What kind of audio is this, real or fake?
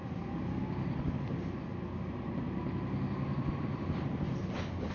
real